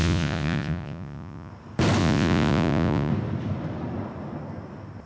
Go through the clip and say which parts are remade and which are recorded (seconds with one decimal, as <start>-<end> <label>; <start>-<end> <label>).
0.0-1.5 remade; 1.5-2.0 recorded; 2.0-3.1 remade; 3.1-5.1 recorded